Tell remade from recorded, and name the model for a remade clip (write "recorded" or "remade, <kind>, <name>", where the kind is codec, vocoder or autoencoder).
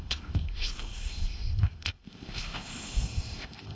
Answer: remade, codec, ZipCodec